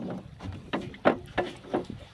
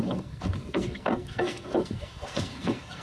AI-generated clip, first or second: second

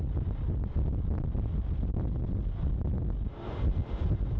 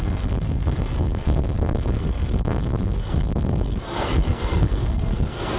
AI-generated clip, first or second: second